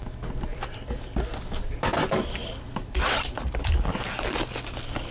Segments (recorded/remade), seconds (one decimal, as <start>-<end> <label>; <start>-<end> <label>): 0.0-0.5 recorded; 0.5-1.9 remade; 1.9-2.4 recorded; 2.4-3.9 remade; 3.9-5.1 recorded